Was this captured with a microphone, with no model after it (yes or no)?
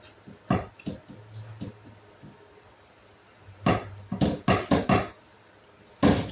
yes